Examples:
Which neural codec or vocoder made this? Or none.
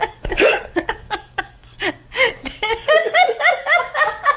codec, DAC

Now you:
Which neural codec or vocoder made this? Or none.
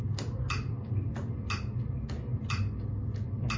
none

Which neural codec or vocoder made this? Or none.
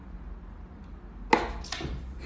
none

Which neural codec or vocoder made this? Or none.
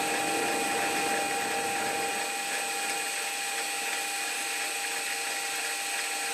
none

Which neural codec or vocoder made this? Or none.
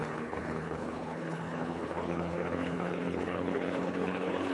codec, HILCodec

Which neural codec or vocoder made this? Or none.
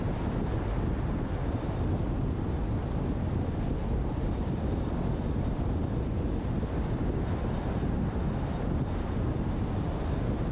none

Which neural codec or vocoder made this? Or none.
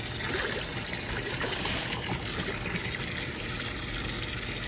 none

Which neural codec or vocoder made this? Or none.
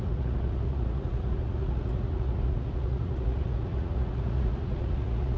vocoder, Vocos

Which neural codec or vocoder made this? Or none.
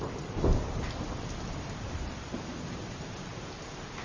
none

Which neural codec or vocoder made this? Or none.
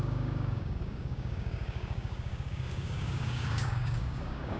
codec, DAC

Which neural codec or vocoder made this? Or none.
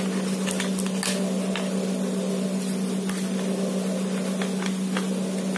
none